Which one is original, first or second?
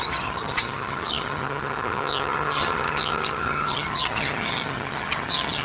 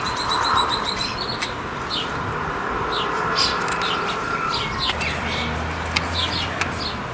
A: second